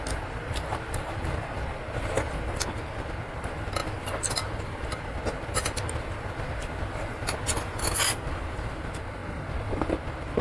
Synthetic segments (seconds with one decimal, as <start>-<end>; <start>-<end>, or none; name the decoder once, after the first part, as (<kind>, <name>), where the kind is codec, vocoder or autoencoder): none